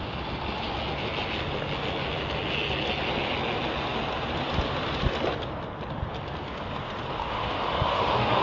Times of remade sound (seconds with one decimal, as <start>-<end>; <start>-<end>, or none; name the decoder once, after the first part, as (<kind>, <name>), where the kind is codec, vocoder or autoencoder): 7.2-8.4 (autoencoder, DAC-VAE)

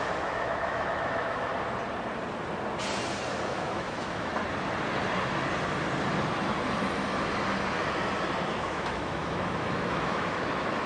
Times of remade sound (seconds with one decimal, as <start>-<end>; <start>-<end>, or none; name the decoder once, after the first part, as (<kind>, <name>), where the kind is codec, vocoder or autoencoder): 0.0-1.5 (autoencoder, DAC-VAE); 3.5-4.3; 8.5-10.9

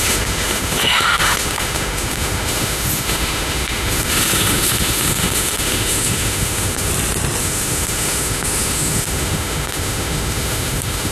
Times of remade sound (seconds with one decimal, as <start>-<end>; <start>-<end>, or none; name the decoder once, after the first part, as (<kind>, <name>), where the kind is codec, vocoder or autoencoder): 0.0-6.9 (autoencoder, DAC-VAE); 7.4-11.1

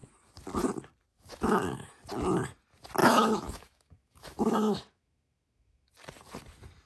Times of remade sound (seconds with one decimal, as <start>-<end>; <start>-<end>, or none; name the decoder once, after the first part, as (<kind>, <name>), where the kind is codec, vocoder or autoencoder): 1.1-1.9 (autoencoder, DAC-VAE); 3.0-5.9

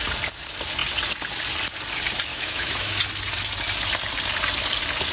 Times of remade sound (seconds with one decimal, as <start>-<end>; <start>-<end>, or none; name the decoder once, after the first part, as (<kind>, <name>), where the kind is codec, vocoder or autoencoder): 2.3-3.0 (autoencoder, DAC-VAE)